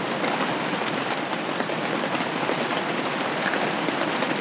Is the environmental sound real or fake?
real